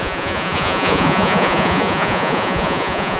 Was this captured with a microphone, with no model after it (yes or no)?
no